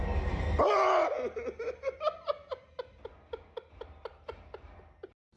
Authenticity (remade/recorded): recorded